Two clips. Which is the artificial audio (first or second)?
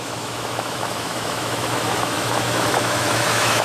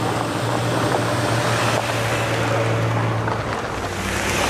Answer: first